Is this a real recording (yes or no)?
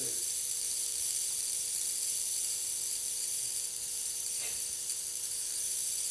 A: no